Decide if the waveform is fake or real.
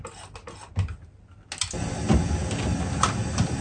real